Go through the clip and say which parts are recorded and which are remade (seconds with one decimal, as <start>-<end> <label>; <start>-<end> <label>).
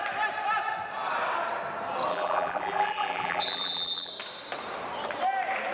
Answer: 0.0-2.1 recorded; 2.1-4.1 remade; 4.1-5.7 recorded